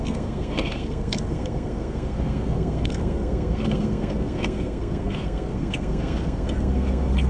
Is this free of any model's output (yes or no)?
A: no